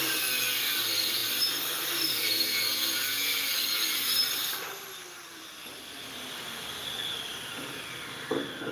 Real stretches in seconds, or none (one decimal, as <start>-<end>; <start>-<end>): none